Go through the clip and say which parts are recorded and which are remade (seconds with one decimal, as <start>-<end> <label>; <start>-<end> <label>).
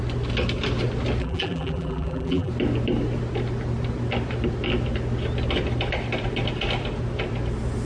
0.0-1.2 recorded; 1.2-2.5 remade; 2.5-7.9 recorded